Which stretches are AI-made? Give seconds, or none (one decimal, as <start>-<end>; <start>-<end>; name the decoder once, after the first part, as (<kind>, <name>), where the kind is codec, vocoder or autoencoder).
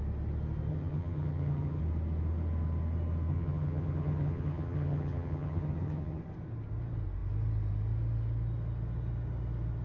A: 0.7-1.8 (vocoder, HiFi-GAN); 3.3-6.2